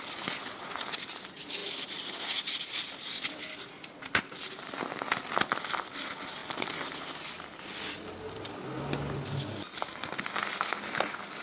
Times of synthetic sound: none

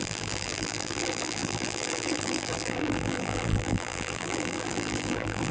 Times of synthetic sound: 0.0-5.5 (vocoder, BigVGAN v2)

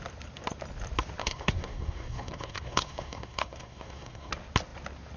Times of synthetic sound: 1.2-4.3 (codec, SNAC)

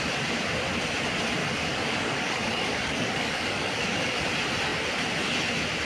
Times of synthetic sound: 1.4-4.2 (codec, DAC)

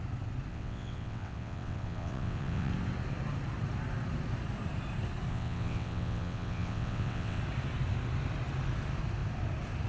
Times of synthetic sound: 0.5-2.7 (vocoder, WaveNeXt); 5.3-7.4